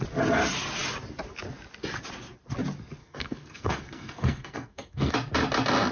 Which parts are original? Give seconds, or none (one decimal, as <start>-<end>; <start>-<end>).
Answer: 0.0-3.0; 5.1-5.9